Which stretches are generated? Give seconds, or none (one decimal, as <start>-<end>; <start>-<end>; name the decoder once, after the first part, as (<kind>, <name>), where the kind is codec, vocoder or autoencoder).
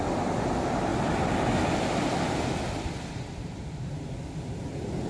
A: none